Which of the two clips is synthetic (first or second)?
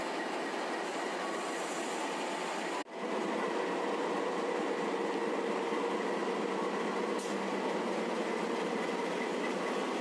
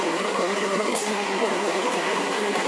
second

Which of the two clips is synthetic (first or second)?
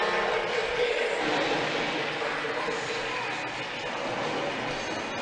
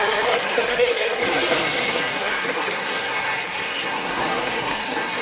second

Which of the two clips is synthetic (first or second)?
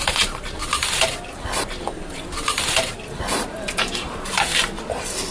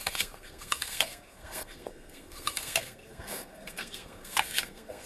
second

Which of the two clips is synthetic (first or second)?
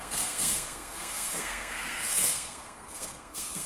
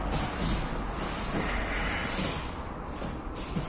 first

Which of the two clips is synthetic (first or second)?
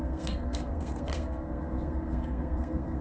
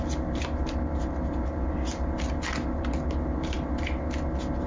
first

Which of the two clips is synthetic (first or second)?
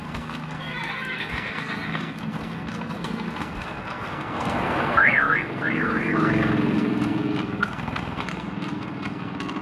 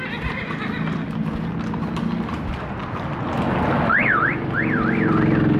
first